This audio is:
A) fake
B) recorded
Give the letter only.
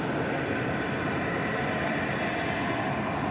B